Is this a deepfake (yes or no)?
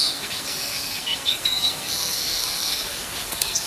yes